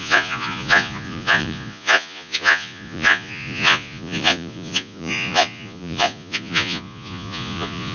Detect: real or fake fake